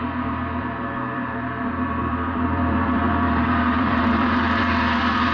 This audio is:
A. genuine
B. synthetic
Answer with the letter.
B